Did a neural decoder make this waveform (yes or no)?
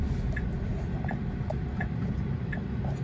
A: no